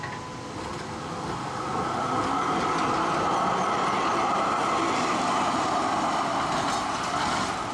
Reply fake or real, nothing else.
real